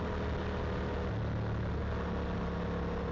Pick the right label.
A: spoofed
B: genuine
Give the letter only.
B